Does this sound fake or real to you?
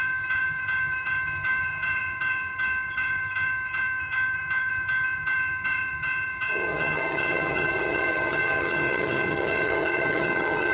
fake